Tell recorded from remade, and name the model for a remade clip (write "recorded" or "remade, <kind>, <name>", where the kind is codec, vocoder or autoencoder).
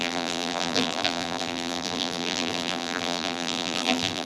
remade, vocoder, BigVGAN v2